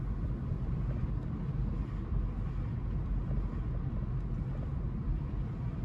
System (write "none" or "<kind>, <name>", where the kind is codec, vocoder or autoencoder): none